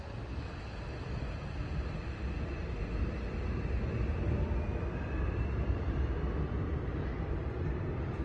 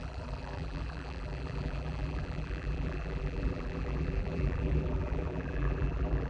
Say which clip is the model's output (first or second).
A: second